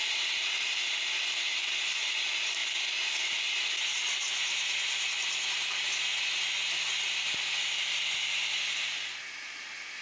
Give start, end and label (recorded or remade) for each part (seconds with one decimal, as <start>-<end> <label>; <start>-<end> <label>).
0.0-1.6 recorded; 1.6-2.2 remade; 2.2-2.6 recorded; 2.6-3.3 remade; 3.3-10.0 recorded